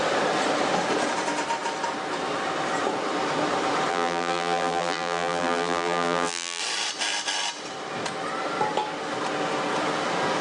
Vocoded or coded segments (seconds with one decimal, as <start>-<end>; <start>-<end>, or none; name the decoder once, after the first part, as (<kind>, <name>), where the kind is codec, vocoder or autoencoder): 3.9-6.6 (vocoder, BigVGAN v2)